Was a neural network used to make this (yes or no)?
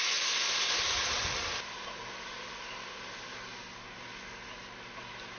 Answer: no